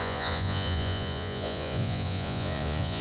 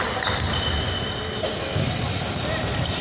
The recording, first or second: second